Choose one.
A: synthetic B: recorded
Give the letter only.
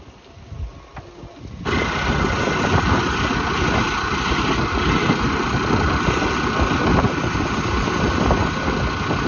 B